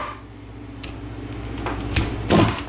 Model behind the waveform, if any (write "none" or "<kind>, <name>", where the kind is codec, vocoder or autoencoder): none